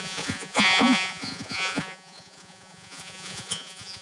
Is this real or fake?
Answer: fake